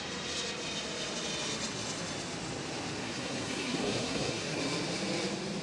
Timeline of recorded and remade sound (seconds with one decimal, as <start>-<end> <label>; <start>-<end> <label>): 0.0-3.0 recorded; 3.0-4.6 remade; 4.6-5.6 recorded

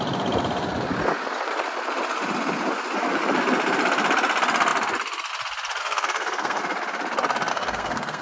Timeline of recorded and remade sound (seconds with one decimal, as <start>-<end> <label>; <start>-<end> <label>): 0.0-5.8 recorded; 5.8-6.6 remade; 6.6-7.5 recorded; 7.5-8.2 remade

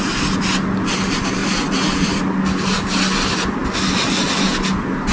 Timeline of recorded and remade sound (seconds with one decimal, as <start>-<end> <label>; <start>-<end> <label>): 0.0-5.1 recorded